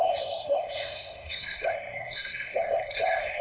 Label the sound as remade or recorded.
remade